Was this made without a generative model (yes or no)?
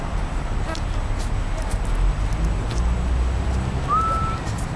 yes